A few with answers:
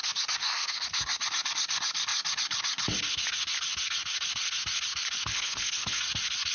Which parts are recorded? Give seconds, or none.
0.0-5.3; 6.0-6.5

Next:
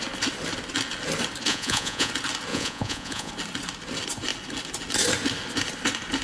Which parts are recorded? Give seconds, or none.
0.0-1.5; 2.1-2.5; 3.3-6.2

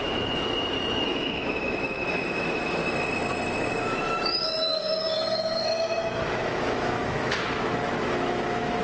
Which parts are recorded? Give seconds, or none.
2.8-3.7

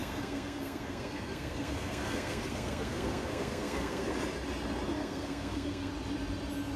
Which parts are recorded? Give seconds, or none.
4.1-5.0; 5.9-6.8